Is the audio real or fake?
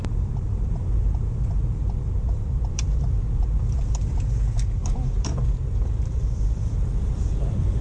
fake